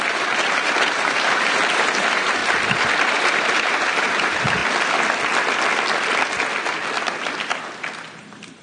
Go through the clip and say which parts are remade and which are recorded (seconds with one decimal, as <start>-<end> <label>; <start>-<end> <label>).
0.0-2.4 remade; 2.4-3.0 recorded; 3.0-4.6 remade; 4.6-8.2 recorded; 8.2-8.6 remade